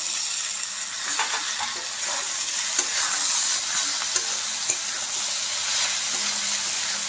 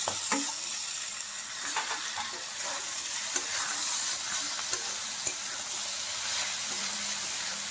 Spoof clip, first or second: second